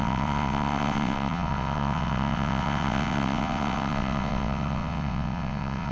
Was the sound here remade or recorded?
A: remade